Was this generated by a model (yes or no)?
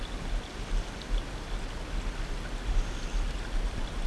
no